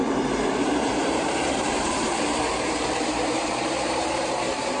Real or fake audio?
fake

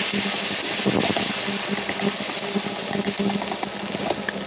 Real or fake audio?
real